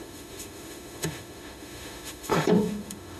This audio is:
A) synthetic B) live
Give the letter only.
A